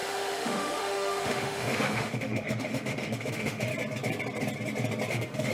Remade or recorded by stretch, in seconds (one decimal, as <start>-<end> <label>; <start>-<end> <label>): 0.0-3.7 remade; 3.7-5.1 recorded; 5.1-5.5 remade